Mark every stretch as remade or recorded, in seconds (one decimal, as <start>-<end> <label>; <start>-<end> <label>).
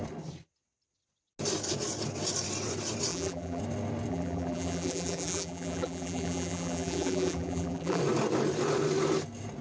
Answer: 0.0-3.1 recorded; 3.1-3.6 remade; 3.6-4.1 recorded; 4.1-8.0 remade; 8.0-9.6 recorded